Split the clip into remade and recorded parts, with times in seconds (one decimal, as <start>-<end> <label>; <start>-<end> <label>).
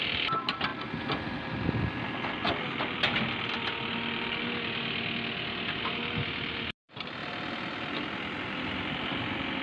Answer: 0.0-9.6 recorded